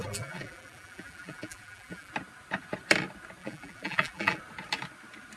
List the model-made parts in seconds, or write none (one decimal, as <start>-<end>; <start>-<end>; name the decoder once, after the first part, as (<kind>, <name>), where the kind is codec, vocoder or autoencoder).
0.0-2.1 (vocoder, BigVGAN v2); 3.4-4.4